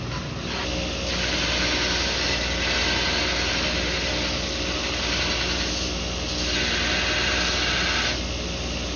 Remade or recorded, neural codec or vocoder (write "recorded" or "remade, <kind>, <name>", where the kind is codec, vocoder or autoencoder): recorded